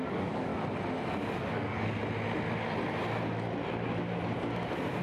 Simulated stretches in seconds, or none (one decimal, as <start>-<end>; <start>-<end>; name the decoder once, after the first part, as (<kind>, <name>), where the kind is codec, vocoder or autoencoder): 0.0-0.5 (codec, DAC); 1.5-2.0